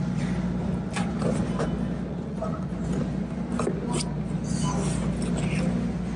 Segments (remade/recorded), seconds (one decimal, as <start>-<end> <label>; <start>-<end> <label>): 0.0-2.1 recorded; 2.1-3.0 remade; 3.0-6.2 recorded